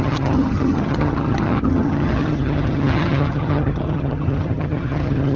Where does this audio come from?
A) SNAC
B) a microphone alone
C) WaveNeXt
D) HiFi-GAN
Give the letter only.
D